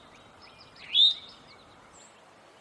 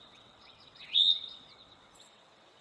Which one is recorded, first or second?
first